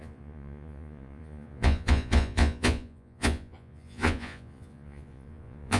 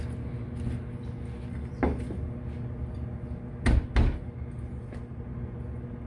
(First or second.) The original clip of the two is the second